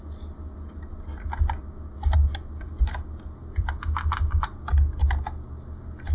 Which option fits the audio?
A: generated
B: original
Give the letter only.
B